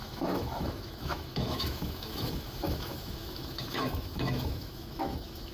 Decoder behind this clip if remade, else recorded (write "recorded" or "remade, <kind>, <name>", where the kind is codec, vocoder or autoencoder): remade, autoencoder, DAC-VAE